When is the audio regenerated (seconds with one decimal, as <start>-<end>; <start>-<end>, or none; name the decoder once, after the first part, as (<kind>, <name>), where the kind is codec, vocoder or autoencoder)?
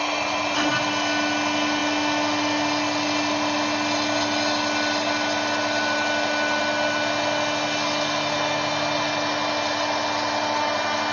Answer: none